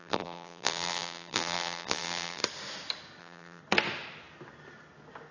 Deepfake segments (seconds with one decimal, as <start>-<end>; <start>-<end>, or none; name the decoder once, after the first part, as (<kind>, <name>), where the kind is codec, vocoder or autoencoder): 0.0-2.4 (vocoder, BigVGAN v2); 3.2-3.6